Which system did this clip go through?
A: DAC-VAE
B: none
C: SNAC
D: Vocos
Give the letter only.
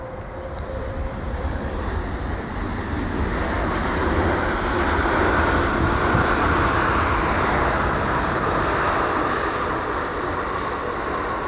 B